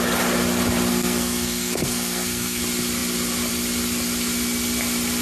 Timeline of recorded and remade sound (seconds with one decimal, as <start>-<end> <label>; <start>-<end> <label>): 0.0-0.9 recorded; 0.9-2.6 remade; 2.6-5.2 recorded